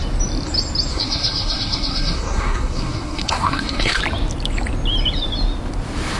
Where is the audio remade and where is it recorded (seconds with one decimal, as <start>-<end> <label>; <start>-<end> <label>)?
0.0-0.9 recorded; 0.9-4.0 remade; 4.0-6.2 recorded